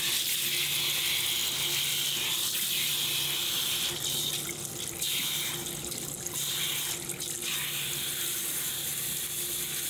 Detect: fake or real real